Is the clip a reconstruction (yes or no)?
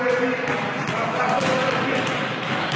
no